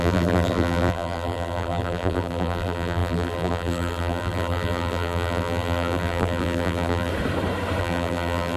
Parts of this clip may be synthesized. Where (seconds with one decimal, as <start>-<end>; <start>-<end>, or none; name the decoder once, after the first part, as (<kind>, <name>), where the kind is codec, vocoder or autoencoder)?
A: 0.0-7.1 (vocoder, BigVGAN v2); 7.8-8.6